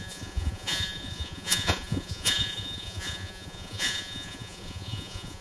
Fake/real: fake